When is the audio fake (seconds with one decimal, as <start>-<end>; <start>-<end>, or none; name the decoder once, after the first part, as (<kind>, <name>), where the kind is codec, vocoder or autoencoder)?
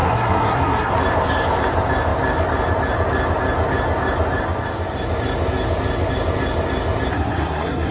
0.0-0.9 (codec, SNAC); 7.1-7.9